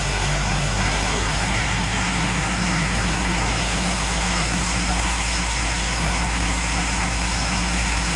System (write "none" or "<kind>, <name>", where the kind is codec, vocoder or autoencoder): codec, SNAC